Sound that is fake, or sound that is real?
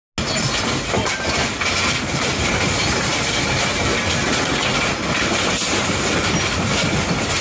real